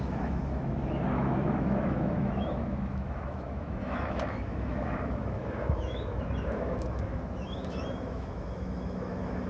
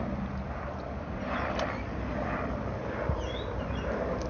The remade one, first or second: first